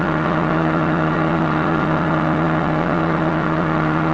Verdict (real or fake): fake